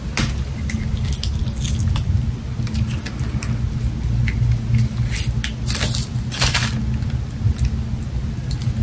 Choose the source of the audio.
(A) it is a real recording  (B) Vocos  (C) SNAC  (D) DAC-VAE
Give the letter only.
A